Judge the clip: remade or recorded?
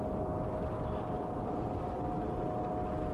recorded